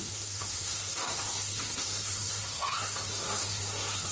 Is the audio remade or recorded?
remade